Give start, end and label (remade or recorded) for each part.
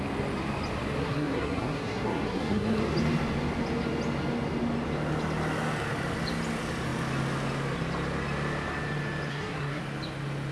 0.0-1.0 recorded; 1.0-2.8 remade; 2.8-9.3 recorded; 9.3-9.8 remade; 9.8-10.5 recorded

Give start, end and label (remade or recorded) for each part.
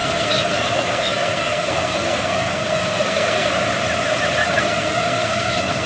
0.0-3.5 remade; 3.5-4.4 recorded; 4.4-5.9 remade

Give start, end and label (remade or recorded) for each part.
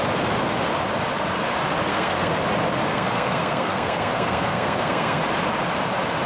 0.0-1.9 recorded; 1.9-2.4 remade; 2.4-2.9 recorded; 2.9-5.2 remade; 5.2-6.3 recorded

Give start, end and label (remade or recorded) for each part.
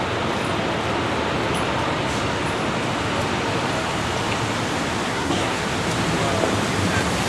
0.0-5.1 recorded; 5.1-5.6 remade; 5.6-7.3 recorded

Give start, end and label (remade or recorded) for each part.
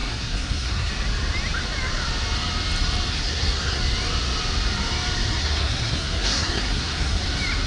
0.0-0.9 remade; 0.9-3.1 recorded; 3.1-3.8 remade; 3.8-5.4 recorded; 5.4-7.2 remade; 7.2-7.7 recorded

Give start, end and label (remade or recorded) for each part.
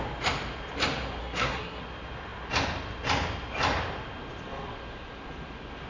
0.0-1.2 recorded; 1.2-1.8 remade; 1.8-5.9 recorded